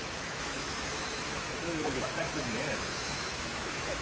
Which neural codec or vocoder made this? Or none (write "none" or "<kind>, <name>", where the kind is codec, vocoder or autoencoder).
autoencoder, DAC-VAE